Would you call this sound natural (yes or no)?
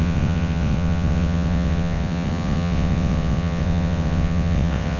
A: no